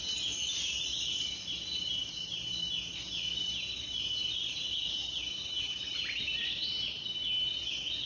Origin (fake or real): real